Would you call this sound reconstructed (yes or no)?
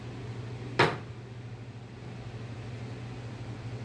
no